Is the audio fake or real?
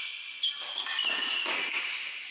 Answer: real